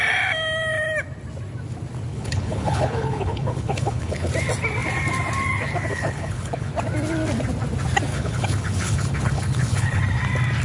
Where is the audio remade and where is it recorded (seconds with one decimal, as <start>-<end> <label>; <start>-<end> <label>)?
0.0-2.1 recorded; 2.1-4.3 remade; 4.3-5.9 recorded; 5.9-6.7 remade; 6.7-8.1 recorded; 8.1-10.0 remade; 10.0-10.6 recorded